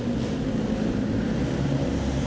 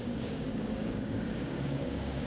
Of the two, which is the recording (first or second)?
first